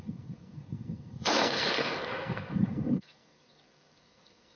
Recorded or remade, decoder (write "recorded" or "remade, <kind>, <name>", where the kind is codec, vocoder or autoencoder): remade, codec, SNAC